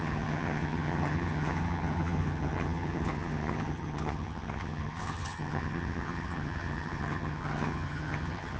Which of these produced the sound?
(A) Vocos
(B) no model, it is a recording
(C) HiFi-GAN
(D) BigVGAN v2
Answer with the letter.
C